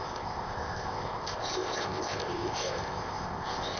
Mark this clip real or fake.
fake